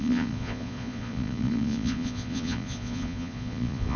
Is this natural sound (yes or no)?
no